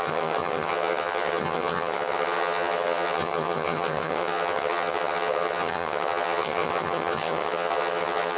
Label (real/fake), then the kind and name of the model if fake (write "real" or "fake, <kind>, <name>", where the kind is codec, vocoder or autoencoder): fake, vocoder, HiFi-GAN